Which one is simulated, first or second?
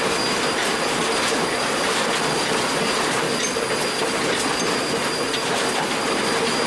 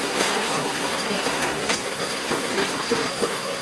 second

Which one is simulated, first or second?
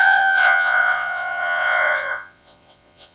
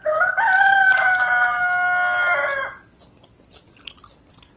first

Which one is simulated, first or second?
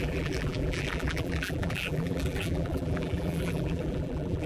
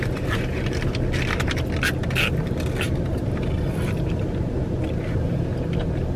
first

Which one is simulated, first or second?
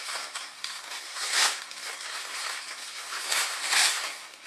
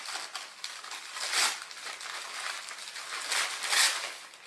first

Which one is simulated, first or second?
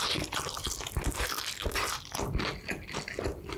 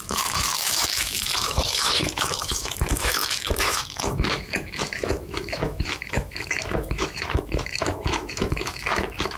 second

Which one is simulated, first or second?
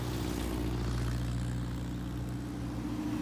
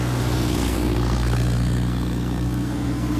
second